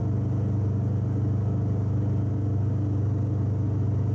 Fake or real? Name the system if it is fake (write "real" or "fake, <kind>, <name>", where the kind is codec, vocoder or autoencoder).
real